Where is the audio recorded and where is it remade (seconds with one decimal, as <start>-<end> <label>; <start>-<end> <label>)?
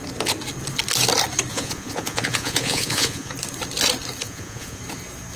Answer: 0.0-1.5 recorded; 1.5-3.3 remade; 3.3-4.2 recorded; 4.2-4.8 remade; 4.8-5.4 recorded